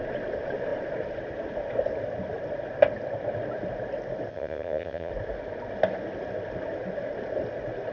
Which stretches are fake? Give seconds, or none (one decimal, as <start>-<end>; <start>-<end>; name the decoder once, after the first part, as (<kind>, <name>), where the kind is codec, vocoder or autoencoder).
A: 4.3-5.1 (vocoder, HiFi-GAN)

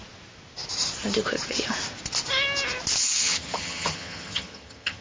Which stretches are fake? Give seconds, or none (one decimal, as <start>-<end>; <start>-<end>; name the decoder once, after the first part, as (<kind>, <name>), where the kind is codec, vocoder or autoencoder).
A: 3.0-5.0 (vocoder, HiFi-GAN)

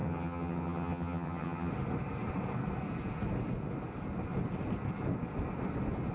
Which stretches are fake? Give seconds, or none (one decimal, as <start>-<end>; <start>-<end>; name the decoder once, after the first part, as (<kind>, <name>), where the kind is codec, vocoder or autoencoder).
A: 0.0-1.7 (vocoder, HiFi-GAN)